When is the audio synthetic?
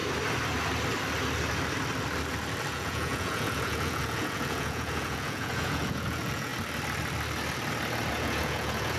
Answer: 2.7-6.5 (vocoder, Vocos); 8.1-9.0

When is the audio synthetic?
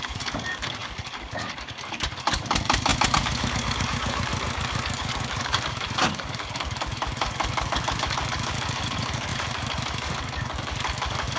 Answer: 0.0-11.4 (codec, DAC)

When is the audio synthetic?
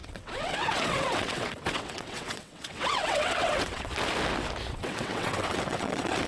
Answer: 0.0-3.9 (vocoder, WaveNeXt); 4.7-6.3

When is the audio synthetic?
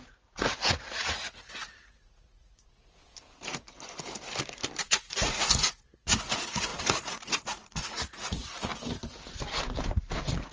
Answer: 0.0-3.0 (vocoder, Vocos); 4.9-8.7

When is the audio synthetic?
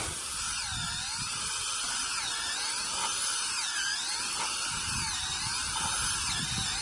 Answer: none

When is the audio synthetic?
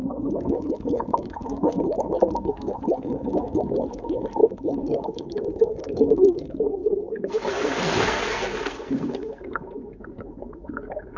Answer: 0.0-11.2 (codec, SNAC)